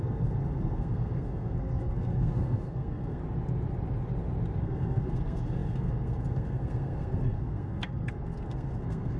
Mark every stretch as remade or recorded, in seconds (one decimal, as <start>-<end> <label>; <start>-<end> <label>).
0.0-3.2 remade; 3.2-4.6 recorded; 4.6-9.2 remade